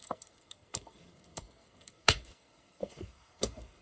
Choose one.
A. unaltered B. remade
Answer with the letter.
B